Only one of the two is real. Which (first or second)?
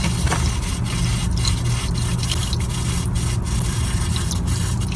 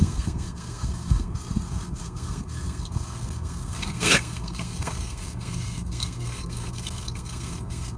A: first